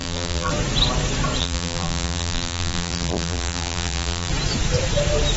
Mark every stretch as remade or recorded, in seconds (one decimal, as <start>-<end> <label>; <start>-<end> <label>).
0.0-0.5 remade; 0.5-1.4 recorded; 1.4-4.3 remade; 4.3-5.4 recorded